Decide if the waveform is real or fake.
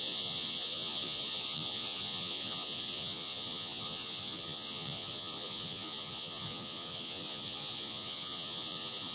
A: fake